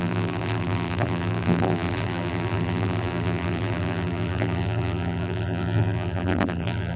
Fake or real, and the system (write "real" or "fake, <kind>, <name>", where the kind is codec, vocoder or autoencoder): fake, vocoder, BigVGAN v2